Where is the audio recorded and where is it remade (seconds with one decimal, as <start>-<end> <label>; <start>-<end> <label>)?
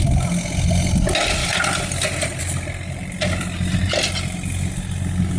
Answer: 0.0-5.4 recorded